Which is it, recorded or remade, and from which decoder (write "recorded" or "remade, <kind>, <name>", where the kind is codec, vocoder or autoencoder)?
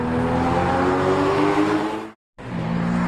recorded